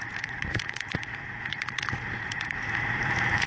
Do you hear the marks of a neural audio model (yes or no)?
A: yes